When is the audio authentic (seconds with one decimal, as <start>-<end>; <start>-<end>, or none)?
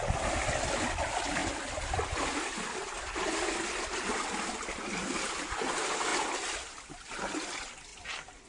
0.0-8.5